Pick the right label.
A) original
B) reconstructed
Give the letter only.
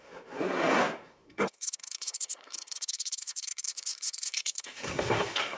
B